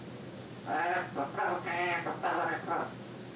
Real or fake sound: real